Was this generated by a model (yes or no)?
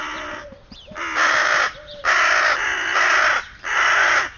yes